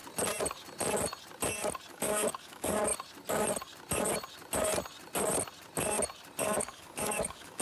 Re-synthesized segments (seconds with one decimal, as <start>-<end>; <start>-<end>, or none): 1.9-2.9; 6.4-7.6